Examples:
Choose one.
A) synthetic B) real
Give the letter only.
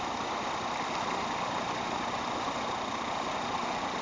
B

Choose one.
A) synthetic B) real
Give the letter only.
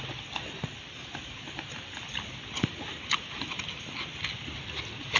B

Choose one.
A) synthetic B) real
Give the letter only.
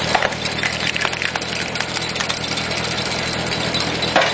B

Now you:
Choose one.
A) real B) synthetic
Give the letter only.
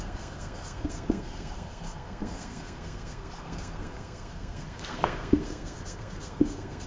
B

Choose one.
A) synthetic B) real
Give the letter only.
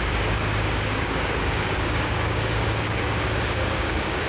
A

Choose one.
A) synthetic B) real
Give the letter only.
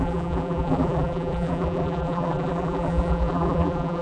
A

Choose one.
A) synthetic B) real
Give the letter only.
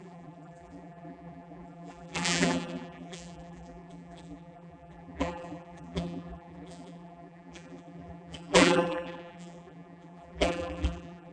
A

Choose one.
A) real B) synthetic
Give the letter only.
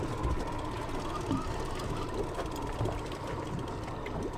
A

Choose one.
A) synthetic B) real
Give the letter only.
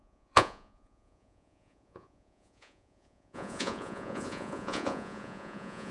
A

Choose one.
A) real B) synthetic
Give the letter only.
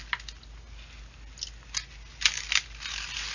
A